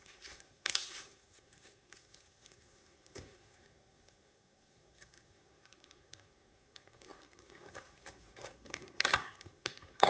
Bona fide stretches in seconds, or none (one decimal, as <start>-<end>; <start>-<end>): none

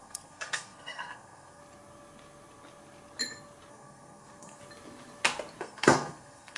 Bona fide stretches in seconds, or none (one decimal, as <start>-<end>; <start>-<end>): 1.6-3.7; 4.6-5.6